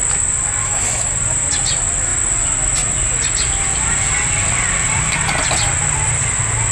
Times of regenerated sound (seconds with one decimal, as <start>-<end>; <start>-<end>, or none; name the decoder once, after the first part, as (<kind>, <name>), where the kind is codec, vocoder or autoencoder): 0.6-1.1 (autoencoder, DAC-VAE)